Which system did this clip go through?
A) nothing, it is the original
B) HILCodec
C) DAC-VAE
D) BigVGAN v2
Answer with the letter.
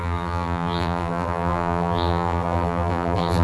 D